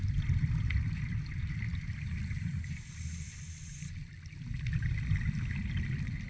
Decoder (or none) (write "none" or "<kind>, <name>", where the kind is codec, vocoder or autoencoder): none